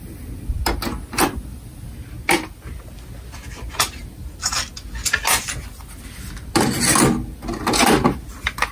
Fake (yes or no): no